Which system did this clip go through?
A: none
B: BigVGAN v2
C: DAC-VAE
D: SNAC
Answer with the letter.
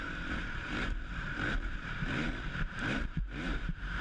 B